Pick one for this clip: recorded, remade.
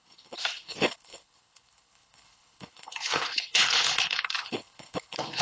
remade